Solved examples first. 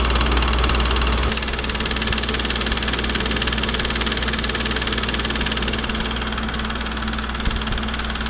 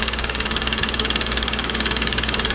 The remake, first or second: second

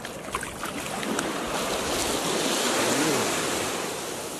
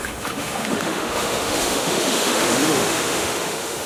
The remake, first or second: second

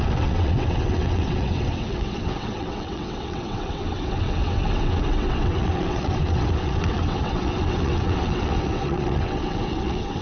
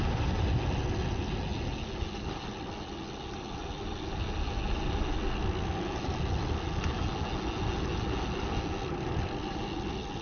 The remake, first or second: first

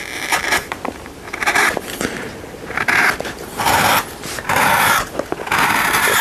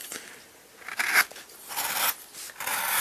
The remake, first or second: first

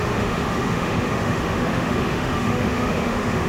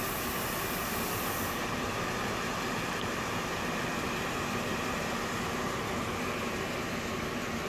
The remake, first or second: first